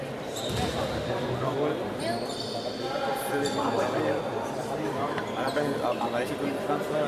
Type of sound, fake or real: real